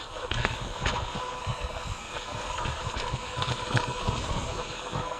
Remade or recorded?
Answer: remade